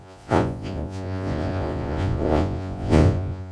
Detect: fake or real fake